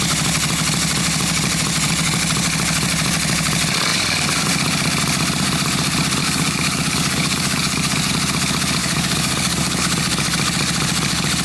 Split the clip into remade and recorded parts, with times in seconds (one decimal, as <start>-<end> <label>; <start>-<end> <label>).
0.0-6.2 recorded; 6.2-8.1 remade; 8.1-8.8 recorded; 8.8-9.8 remade; 9.8-11.4 recorded